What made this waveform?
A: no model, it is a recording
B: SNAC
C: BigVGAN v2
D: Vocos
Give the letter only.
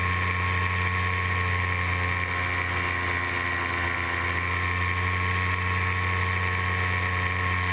A